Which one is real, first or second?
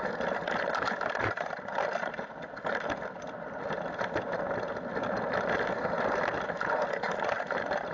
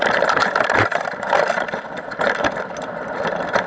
first